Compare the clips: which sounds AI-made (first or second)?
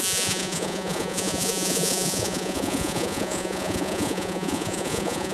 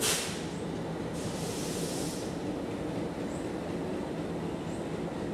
first